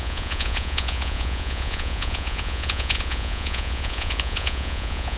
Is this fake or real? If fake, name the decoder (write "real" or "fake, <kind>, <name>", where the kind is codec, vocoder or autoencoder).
fake, vocoder, Vocos